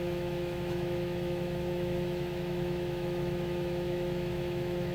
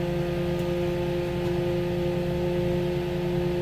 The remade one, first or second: first